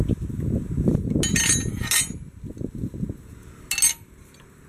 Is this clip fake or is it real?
real